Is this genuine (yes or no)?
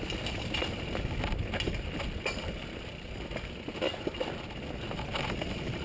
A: yes